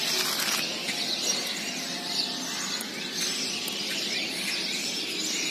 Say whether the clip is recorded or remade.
recorded